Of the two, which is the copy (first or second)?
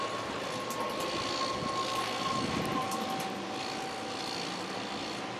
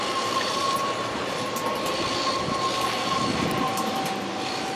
second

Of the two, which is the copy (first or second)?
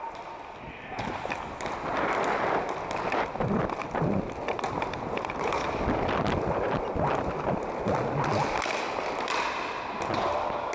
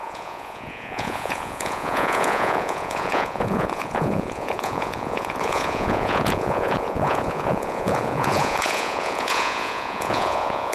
second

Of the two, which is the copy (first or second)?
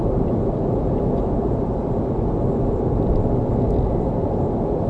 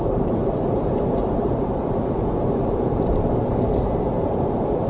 second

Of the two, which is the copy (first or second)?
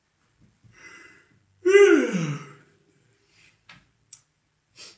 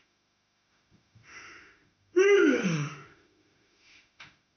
second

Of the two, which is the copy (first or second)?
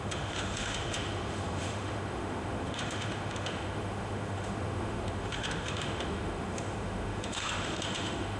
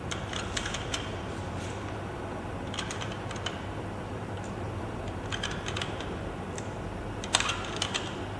first